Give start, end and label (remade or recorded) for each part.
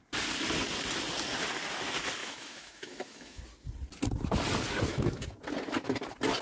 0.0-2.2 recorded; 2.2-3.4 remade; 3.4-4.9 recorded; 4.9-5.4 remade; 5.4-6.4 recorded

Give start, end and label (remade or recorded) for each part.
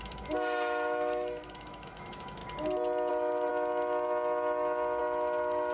0.0-2.4 remade; 2.4-3.1 recorded; 3.1-3.5 remade; 3.5-5.0 recorded; 5.0-5.7 remade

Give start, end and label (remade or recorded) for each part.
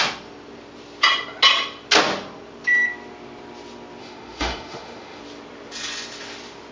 0.0-4.0 recorded; 4.0-5.2 remade; 5.2-6.7 recorded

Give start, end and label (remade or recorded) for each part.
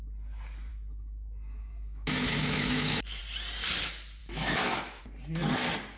0.0-0.7 recorded; 0.7-3.2 remade; 3.2-4.2 recorded; 4.2-5.0 remade; 5.0-6.0 recorded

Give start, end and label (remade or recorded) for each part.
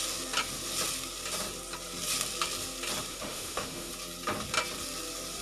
0.0-3.1 recorded; 3.1-3.9 remade; 3.9-5.4 recorded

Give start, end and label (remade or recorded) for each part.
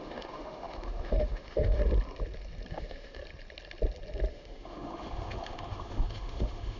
0.0-1.8 remade; 1.8-2.7 recorded; 2.7-3.2 remade; 3.2-4.3 recorded; 4.3-6.8 remade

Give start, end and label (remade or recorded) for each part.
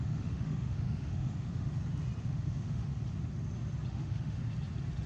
0.0-1.7 remade; 1.7-2.2 recorded; 2.2-2.9 remade; 2.9-3.9 recorded; 3.9-4.4 remade; 4.4-5.1 recorded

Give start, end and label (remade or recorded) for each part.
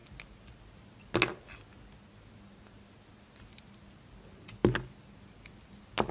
0.0-6.1 recorded